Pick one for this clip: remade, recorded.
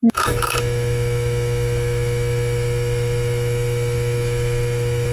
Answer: remade